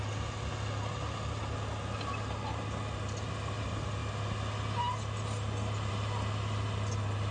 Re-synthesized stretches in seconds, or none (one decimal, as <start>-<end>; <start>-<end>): none